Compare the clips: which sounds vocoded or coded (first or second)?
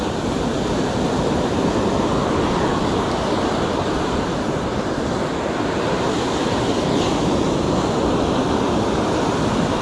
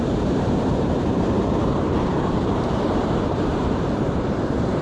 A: second